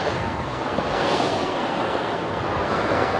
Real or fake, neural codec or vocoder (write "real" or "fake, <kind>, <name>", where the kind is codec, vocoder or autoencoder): fake, codec, SNAC